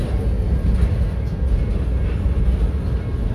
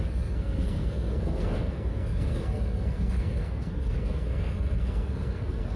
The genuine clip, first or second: first